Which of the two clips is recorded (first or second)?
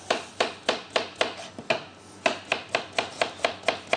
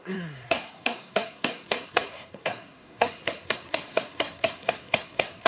first